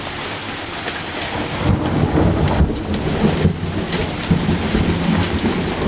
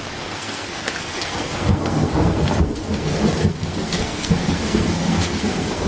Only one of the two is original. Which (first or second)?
first